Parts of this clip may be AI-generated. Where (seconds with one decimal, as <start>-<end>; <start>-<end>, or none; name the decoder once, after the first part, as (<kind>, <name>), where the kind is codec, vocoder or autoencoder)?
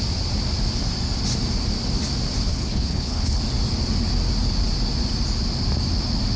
2.5-3.4 (codec, HILCodec)